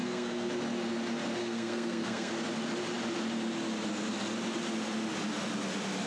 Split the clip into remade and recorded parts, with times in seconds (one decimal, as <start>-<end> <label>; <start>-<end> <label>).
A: 0.0-0.5 remade; 0.5-1.4 recorded; 1.4-2.3 remade; 2.3-6.1 recorded